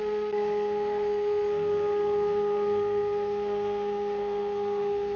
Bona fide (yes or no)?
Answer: no